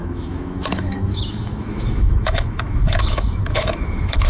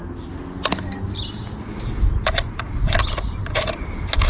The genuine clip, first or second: second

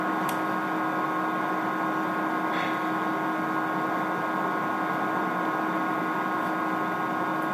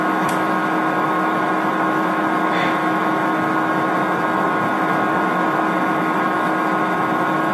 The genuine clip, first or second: first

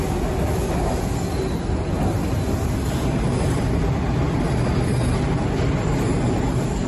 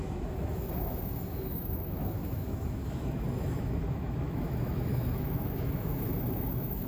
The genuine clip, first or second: first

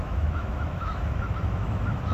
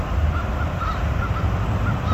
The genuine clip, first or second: second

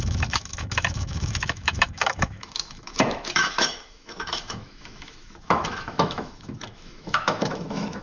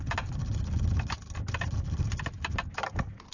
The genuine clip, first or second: second